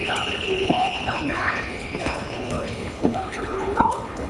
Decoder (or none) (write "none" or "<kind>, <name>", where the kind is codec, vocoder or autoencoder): codec, HILCodec